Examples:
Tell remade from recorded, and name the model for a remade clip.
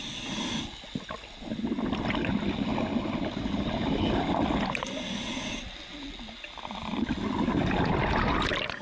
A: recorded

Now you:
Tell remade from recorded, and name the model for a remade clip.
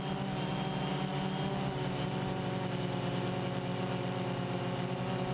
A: recorded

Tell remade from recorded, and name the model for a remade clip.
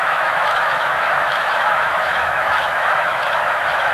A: remade, autoencoder, DAC-VAE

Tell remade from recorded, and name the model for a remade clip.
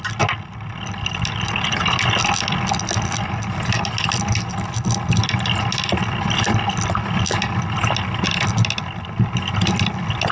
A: recorded